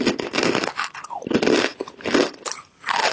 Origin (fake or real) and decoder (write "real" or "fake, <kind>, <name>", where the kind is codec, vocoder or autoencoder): real